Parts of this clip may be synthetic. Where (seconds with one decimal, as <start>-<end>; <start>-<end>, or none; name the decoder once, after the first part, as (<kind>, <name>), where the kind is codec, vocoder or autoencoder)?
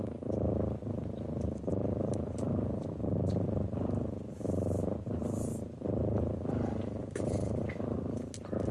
1.7-2.9 (vocoder, BigVGAN v2); 7.0-7.6